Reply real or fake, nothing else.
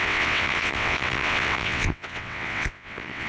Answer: fake